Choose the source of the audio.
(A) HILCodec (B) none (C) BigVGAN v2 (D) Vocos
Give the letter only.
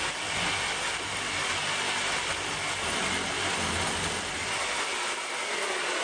B